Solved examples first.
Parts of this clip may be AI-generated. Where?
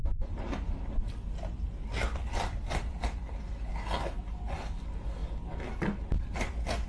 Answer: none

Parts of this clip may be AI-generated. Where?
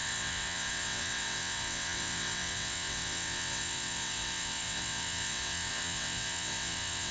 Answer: 0.0-7.1 (vocoder, WaveNeXt)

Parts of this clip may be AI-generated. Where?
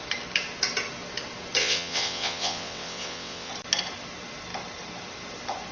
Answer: 1.6-3.5 (vocoder, WaveNeXt)